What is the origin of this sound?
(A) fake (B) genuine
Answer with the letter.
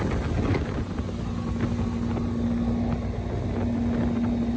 B